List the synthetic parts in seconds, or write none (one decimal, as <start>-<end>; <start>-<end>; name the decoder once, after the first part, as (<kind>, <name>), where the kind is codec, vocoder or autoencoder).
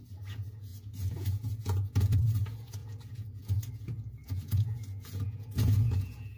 0.0-6.4 (vocoder, Vocos)